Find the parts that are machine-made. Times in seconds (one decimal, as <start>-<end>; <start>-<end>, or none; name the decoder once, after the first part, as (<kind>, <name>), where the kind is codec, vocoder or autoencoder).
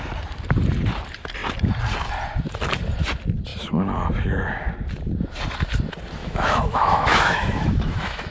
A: 6.2-8.3 (autoencoder, DAC-VAE)